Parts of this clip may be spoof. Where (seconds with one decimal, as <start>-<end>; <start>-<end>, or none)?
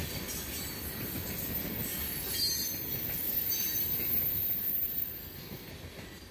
5.2-5.7